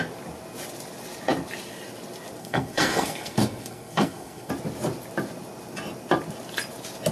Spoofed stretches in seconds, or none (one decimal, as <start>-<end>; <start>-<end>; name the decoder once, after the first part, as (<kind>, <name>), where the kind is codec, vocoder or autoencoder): 2.4-4.5 (codec, SNAC)